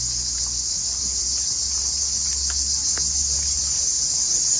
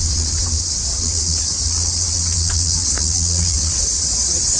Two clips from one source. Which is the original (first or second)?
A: first